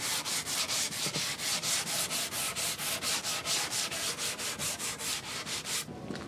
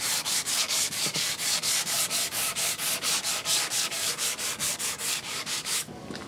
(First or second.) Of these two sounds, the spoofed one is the second